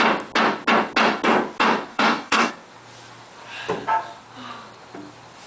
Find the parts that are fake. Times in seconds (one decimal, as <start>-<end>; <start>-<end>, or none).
1.9-2.5

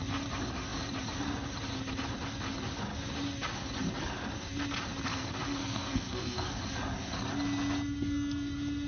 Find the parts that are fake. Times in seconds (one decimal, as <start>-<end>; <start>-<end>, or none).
5.1-6.6

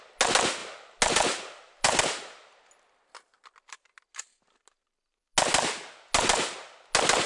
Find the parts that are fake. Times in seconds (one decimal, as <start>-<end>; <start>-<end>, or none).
none